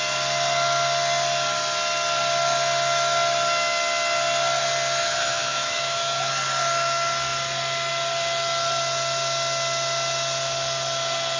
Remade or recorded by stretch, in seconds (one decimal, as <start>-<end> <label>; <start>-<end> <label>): 0.0-5.0 recorded; 5.0-6.3 remade; 6.3-11.4 recorded